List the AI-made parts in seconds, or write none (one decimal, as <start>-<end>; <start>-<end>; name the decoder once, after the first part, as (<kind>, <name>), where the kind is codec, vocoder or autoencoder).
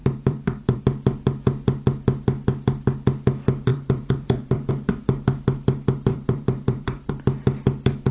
0.0-0.8 (vocoder, BigVGAN v2); 3.7-4.7; 6.1-7.1